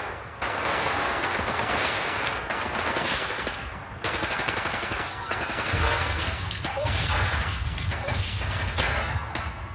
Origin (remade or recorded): remade